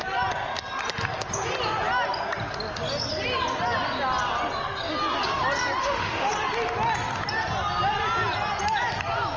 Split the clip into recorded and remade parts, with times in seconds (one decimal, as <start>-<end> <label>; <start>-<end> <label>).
0.0-5.8 recorded; 5.8-6.3 remade; 6.3-9.4 recorded

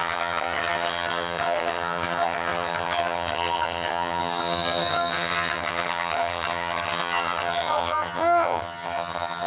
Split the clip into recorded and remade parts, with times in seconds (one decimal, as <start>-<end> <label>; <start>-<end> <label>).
0.0-9.5 remade

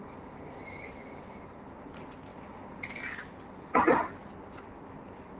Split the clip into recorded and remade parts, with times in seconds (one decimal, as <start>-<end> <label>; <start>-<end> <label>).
0.0-5.4 recorded

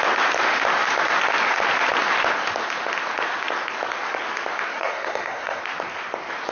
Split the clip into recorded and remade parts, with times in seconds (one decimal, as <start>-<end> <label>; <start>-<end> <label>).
0.0-4.7 recorded; 4.7-5.6 remade; 5.6-6.5 recorded

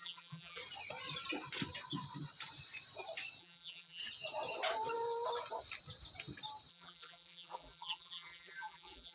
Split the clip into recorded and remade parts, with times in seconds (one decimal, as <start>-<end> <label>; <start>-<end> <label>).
0.0-0.6 remade; 0.6-3.4 recorded; 3.4-4.0 remade; 4.0-6.7 recorded; 6.7-9.1 remade

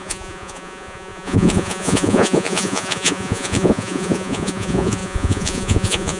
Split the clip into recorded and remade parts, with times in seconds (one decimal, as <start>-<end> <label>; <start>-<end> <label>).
0.0-6.2 remade

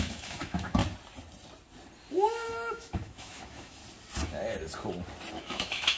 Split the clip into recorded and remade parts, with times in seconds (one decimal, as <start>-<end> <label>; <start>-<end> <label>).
0.0-0.8 remade; 0.8-2.1 recorded; 2.1-3.8 remade; 3.8-5.3 recorded; 5.3-6.0 remade